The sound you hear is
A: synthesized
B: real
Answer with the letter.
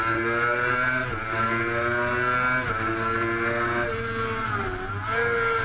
B